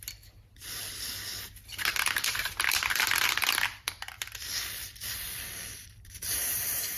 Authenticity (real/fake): fake